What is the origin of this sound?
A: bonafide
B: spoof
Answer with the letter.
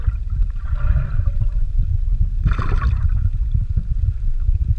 A